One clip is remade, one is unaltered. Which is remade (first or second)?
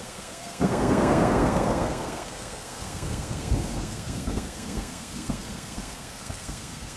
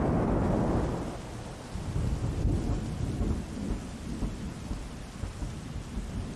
first